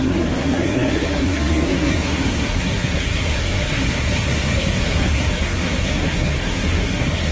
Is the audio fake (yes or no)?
yes